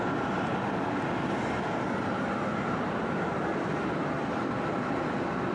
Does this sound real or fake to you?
real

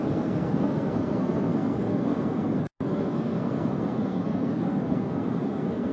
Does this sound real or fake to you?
fake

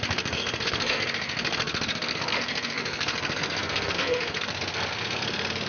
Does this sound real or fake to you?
fake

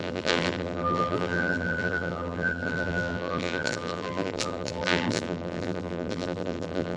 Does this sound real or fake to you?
fake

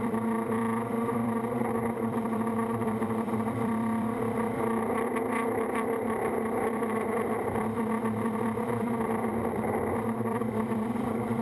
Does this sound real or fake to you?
fake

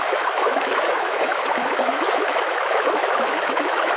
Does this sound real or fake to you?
fake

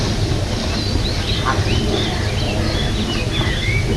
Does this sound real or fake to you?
real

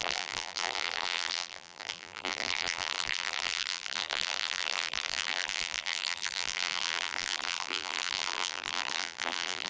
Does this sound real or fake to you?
fake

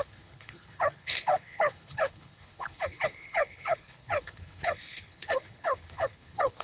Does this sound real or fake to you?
fake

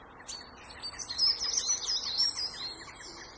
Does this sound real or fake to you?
real